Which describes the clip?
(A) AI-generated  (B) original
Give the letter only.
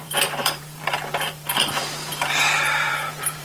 A